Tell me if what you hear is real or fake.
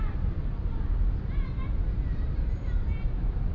real